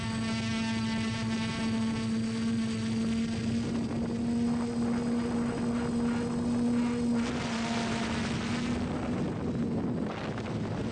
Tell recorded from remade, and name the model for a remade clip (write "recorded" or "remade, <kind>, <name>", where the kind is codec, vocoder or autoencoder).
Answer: recorded